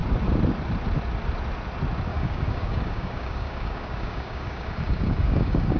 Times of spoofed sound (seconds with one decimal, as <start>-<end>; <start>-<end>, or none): 2.1-5.8